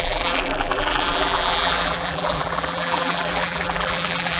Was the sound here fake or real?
fake